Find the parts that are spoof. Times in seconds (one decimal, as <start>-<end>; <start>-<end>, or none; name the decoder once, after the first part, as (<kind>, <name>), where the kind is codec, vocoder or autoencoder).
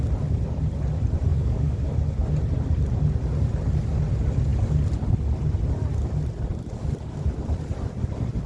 1.3-1.9 (codec, DAC)